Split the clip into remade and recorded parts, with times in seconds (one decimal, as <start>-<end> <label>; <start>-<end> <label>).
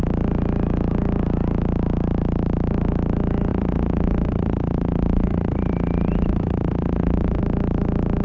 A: 0.0-3.5 recorded; 3.5-7.4 remade; 7.4-8.2 recorded